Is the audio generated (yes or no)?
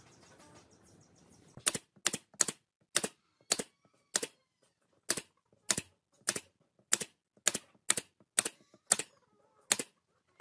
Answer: no